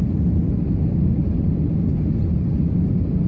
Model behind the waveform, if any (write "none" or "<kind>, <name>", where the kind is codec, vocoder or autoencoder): none